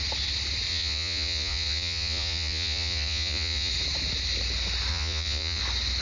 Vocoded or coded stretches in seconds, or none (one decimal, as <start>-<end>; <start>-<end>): 0.7-3.7; 4.9-5.6